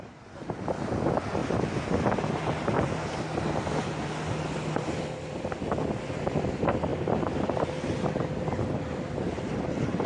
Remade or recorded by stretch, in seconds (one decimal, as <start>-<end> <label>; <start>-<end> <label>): 0.0-10.1 recorded